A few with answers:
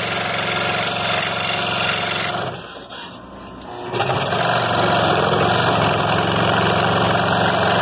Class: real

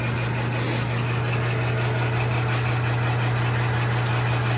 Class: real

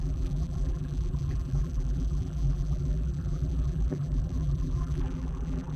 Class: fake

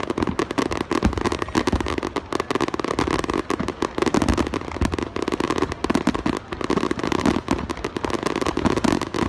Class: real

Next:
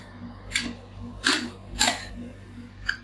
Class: fake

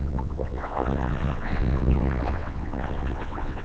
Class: fake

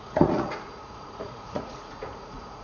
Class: fake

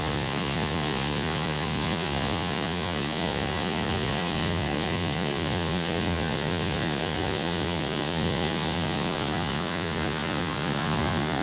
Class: fake